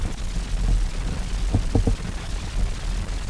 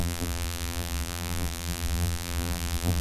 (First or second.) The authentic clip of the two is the first